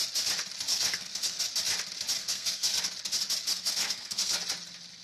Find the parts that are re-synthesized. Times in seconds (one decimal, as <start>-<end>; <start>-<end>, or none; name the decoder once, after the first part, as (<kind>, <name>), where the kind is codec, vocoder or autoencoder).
0.7-1.4 (codec, SNAC); 2.2-2.8; 3.5-4.4